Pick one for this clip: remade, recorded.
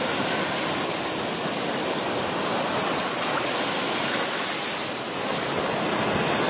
recorded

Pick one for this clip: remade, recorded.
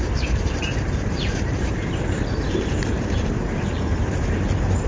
remade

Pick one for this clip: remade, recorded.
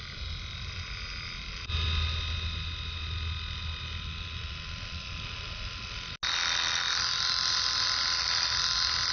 recorded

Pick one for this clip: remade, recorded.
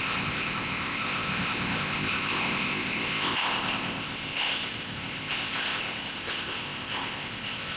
remade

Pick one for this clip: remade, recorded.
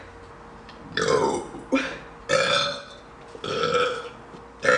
recorded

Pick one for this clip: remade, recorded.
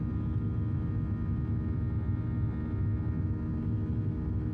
recorded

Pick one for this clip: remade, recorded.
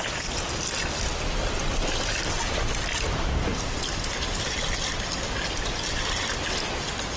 recorded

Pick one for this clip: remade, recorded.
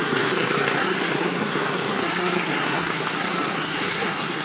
remade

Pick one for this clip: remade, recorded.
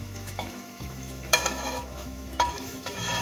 remade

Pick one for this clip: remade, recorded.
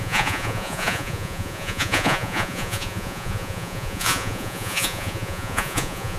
remade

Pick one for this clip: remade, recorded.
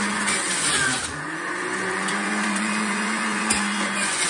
remade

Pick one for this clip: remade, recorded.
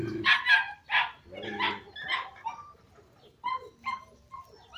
recorded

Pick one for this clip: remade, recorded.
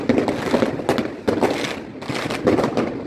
recorded